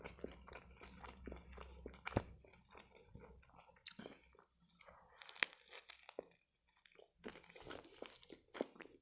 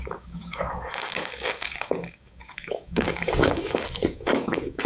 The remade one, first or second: second